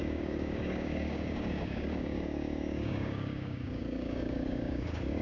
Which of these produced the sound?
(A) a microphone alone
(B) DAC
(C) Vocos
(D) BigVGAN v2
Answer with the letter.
B